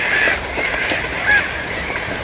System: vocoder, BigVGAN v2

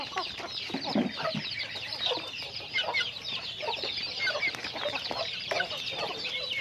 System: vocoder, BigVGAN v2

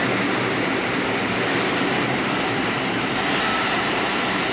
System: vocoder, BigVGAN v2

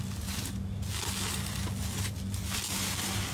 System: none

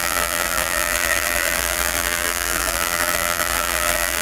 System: vocoder, BigVGAN v2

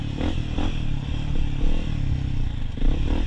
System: none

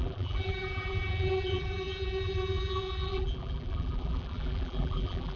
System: vocoder, BigVGAN v2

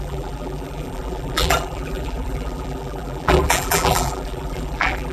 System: vocoder, BigVGAN v2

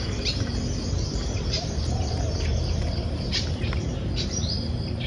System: vocoder, BigVGAN v2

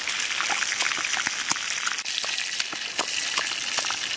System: none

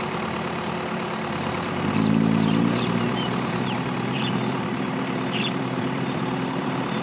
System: vocoder, BigVGAN v2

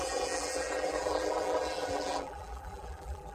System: vocoder, BigVGAN v2